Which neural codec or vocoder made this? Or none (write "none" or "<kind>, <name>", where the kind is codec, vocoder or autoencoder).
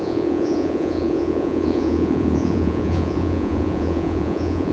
vocoder, Vocos